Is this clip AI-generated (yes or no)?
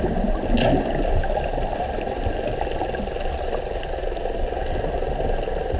no